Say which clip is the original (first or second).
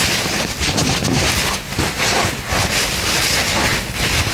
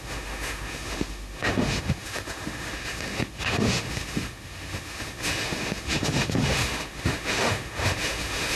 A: first